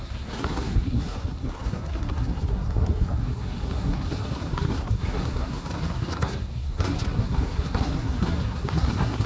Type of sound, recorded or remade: remade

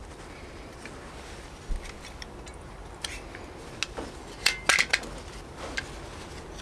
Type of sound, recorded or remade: recorded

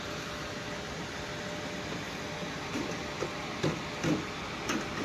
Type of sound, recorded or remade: recorded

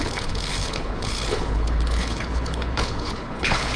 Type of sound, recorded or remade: remade